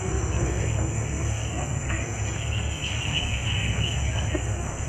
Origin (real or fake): fake